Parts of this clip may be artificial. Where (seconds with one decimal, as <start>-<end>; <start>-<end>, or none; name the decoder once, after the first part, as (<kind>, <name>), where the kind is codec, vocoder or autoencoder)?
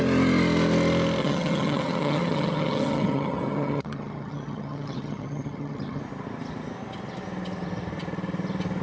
1.2-6.0 (vocoder, HiFi-GAN)